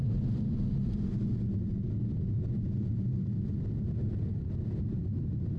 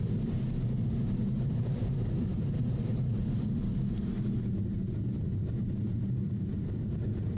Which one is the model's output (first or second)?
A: second